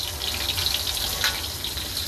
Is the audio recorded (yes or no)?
yes